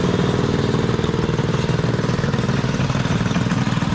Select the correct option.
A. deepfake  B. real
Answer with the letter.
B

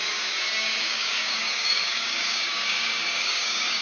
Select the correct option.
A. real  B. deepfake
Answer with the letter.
B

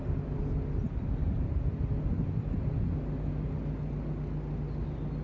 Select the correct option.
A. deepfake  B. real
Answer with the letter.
B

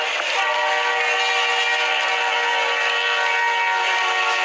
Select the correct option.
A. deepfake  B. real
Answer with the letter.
B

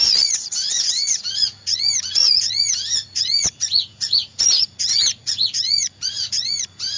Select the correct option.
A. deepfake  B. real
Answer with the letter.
A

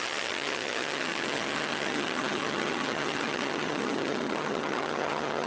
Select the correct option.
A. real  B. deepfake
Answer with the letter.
B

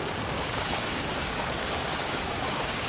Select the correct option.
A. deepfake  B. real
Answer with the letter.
A